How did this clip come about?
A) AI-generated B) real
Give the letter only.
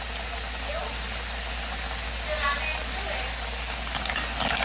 B